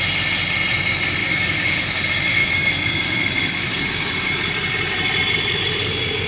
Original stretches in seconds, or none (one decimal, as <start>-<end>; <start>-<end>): 0.0-1.2; 2.0-2.4; 4.3-6.3